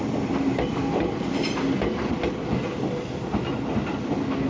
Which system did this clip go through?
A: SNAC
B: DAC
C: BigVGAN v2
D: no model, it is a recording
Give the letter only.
D